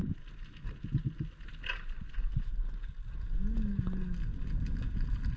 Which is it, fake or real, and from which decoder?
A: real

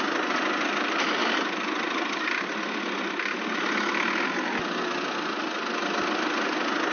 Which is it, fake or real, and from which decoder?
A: real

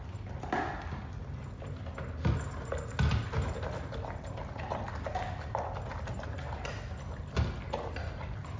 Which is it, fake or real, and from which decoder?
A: real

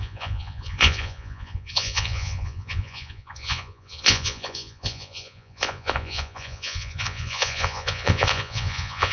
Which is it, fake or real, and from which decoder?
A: fake, vocoder, Vocos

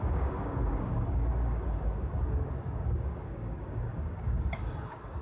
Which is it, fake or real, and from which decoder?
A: fake, codec, DAC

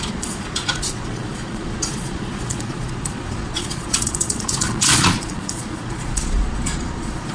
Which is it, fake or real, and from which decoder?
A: fake, vocoder, Vocos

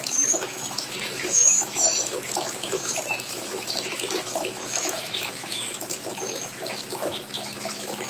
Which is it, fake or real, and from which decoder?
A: fake, autoencoder, DAC-VAE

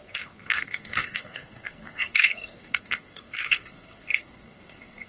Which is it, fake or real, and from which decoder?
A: fake, codec, SNAC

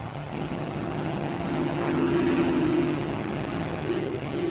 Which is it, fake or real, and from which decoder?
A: fake, vocoder, HiFi-GAN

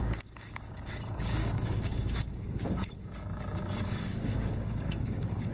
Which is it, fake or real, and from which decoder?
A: fake, codec, DAC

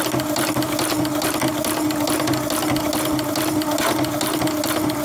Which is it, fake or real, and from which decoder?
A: real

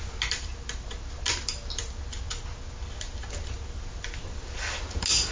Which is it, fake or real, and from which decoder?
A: real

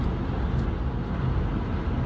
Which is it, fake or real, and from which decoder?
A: real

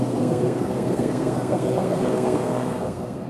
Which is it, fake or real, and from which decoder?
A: fake, codec, SNAC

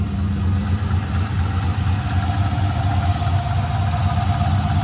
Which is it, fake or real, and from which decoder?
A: real